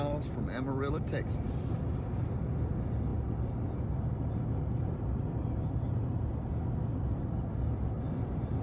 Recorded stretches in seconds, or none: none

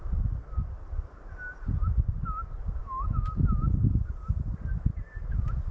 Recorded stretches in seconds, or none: 0.0-2.8; 3.7-5.7

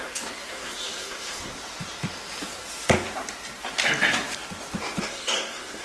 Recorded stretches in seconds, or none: 1.5-5.0

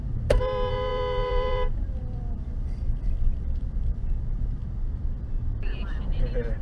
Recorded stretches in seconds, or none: 4.6-5.6

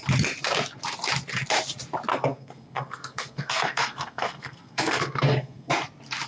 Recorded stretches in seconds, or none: 0.0-2.1; 5.7-6.3

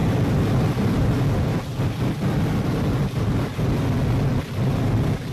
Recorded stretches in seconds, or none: 0.0-5.3